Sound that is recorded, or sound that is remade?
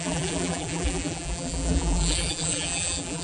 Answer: remade